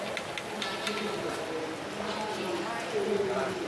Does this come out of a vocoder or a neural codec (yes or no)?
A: no